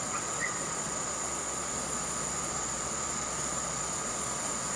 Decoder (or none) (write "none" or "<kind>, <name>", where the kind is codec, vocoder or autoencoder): vocoder, Vocos